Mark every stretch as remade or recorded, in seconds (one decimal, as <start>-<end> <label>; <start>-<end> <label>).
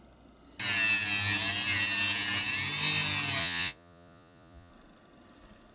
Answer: 0.0-3.4 recorded; 3.4-4.7 remade; 4.7-5.7 recorded